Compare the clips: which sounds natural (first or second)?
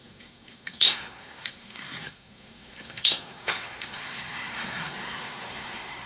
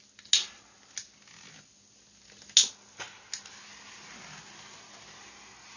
second